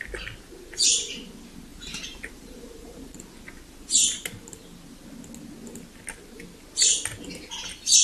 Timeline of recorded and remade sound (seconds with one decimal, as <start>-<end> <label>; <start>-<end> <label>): 0.0-1.7 recorded; 1.7-3.2 remade; 3.2-8.0 recorded